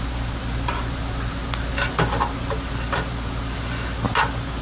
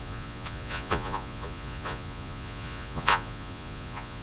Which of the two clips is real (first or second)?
first